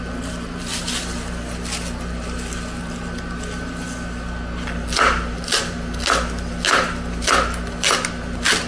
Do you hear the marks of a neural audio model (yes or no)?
no